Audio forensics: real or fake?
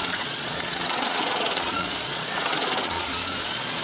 fake